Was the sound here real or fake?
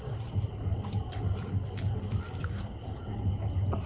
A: real